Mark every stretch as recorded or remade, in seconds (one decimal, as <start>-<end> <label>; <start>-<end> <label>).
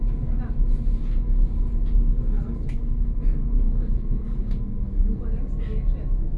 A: 0.0-2.0 recorded; 2.0-5.2 remade; 5.2-6.4 recorded